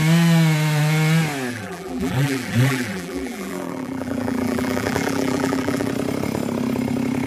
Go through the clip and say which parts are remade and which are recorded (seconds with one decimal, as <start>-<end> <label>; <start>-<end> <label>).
0.0-1.5 recorded; 1.5-5.9 remade; 5.9-7.3 recorded